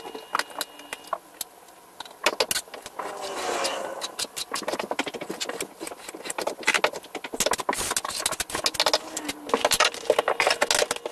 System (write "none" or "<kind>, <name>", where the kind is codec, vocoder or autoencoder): none